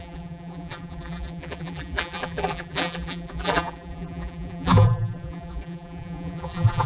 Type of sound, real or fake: fake